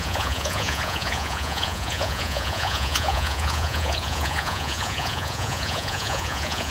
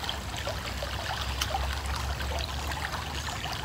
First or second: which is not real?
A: first